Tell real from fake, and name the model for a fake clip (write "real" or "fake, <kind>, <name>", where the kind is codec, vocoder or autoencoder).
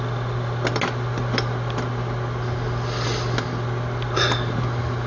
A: real